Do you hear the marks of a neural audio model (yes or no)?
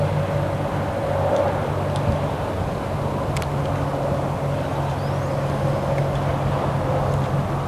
no